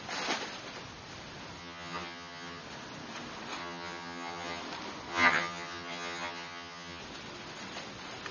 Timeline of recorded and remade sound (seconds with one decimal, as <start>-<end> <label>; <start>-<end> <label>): 0.0-1.6 recorded; 1.6-2.6 remade; 2.6-3.6 recorded; 3.6-4.6 remade; 4.6-5.1 recorded; 5.1-7.0 remade; 7.0-8.3 recorded